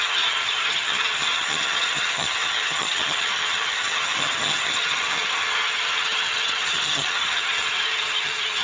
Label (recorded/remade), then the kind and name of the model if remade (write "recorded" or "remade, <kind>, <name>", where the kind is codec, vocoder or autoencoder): remade, vocoder, HiFi-GAN